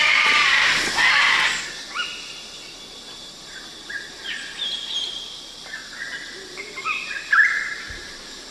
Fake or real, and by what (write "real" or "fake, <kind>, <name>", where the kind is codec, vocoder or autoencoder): fake, vocoder, BigVGAN v2